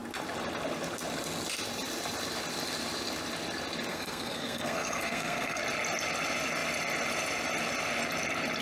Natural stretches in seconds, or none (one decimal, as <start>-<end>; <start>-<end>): 0.0-3.9; 5.6-8.6